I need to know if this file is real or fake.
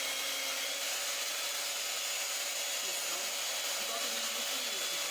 real